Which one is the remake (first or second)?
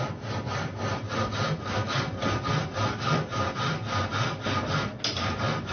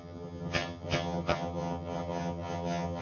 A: second